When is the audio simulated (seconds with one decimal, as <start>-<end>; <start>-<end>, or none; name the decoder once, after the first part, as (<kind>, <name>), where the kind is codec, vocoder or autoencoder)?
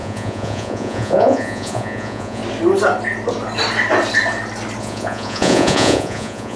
0.0-2.4 (vocoder, Vocos); 4.8-6.6